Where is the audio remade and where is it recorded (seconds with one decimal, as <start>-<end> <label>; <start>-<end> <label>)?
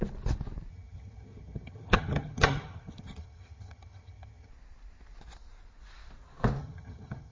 0.0-0.7 recorded; 0.7-4.5 remade; 4.5-6.6 recorded; 6.6-7.3 remade